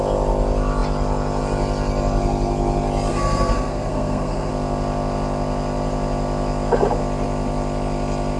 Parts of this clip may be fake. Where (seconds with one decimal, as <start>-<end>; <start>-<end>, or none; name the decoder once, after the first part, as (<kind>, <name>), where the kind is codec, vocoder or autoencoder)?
3.1-4.5 (codec, SNAC)